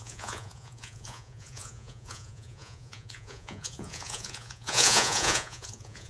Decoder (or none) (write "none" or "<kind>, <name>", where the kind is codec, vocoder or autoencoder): vocoder, Vocos